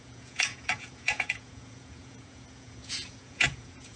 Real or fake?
fake